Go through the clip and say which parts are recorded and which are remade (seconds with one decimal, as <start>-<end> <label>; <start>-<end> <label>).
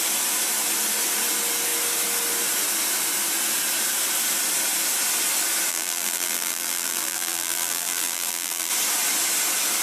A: 0.0-5.7 recorded; 5.7-8.7 remade; 8.7-9.8 recorded